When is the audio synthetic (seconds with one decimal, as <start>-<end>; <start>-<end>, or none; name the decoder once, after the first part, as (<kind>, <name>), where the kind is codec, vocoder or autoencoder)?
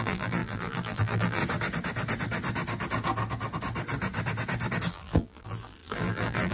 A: 0.0-1.4 (vocoder, BigVGAN v2); 4.9-6.5